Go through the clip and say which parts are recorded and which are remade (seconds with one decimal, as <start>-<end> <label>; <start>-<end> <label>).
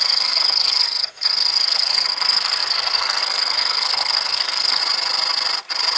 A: 0.0-4.8 remade; 4.8-6.0 recorded